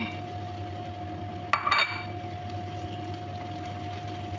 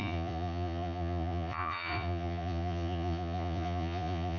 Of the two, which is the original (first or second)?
first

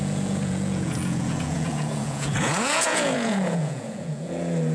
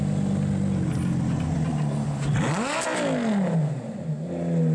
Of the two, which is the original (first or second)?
second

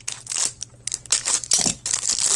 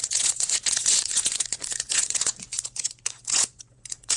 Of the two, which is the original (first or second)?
first